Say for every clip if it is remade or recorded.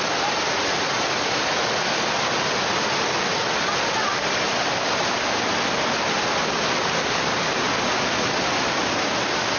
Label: recorded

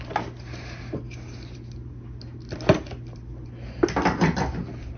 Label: recorded